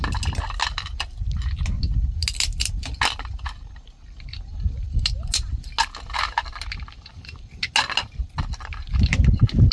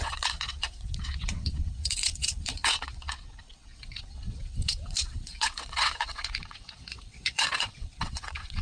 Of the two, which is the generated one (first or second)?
second